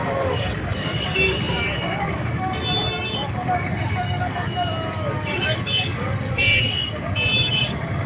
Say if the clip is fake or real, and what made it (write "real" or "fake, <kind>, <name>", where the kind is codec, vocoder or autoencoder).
fake, codec, DAC